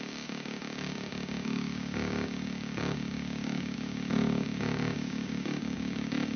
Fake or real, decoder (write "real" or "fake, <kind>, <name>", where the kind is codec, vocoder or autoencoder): fake, codec, DAC